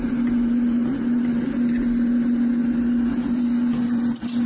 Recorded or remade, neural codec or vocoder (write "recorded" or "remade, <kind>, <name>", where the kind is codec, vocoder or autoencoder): recorded